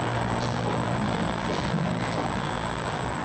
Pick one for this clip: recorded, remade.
remade